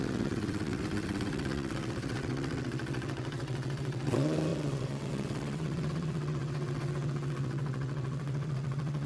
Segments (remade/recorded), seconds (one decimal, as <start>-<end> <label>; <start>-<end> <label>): 0.0-9.1 remade